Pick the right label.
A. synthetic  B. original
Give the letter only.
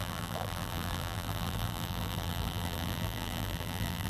A